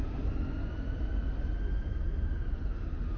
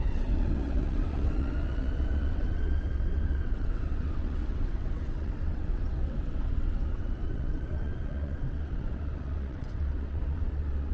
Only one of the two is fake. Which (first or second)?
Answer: second